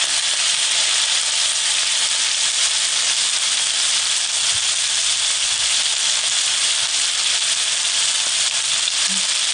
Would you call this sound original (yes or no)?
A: yes